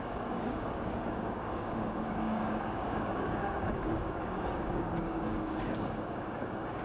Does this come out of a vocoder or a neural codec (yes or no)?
yes